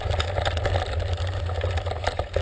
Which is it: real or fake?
real